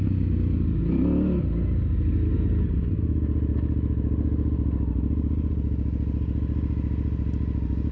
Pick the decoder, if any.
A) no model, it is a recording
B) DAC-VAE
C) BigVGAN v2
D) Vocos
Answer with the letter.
A